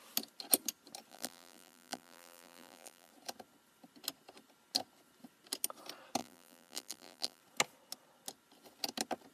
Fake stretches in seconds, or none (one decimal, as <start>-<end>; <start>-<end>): 1.1-3.1; 6.2-7.4